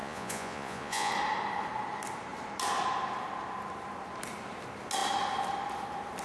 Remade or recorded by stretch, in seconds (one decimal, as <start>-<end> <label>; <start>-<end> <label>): 0.0-1.1 remade; 1.1-6.2 recorded

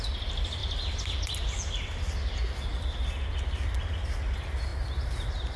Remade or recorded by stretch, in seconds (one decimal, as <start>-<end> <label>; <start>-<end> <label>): 0.0-5.6 recorded

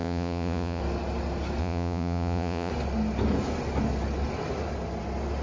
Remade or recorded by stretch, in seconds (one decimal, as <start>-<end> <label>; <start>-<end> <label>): 0.0-0.8 remade; 0.8-1.6 recorded; 1.6-2.7 remade; 2.7-5.4 recorded

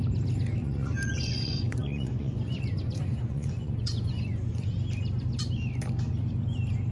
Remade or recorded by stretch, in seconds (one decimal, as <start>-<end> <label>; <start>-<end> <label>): 0.0-0.6 recorded; 0.6-4.7 remade; 4.7-6.9 recorded

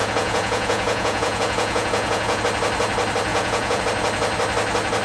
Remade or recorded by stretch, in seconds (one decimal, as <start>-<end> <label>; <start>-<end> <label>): 0.0-2.4 remade; 2.4-3.3 recorded; 3.3-3.8 remade; 3.8-5.0 recorded